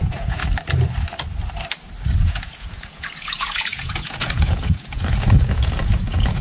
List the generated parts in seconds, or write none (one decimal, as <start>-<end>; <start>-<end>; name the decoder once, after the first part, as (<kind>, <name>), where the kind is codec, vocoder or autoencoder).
0.0-0.4 (vocoder, Vocos); 2.2-6.4